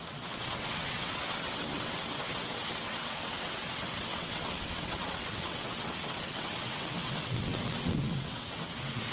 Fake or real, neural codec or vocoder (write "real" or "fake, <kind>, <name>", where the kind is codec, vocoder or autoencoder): fake, vocoder, WaveNeXt